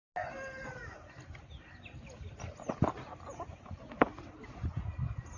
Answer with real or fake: real